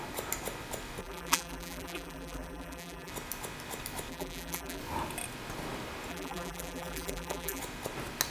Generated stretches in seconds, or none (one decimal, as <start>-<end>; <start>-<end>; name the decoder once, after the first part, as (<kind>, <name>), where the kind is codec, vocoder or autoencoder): 1.0-3.1 (vocoder, BigVGAN v2); 4.1-4.8; 6.1-7.6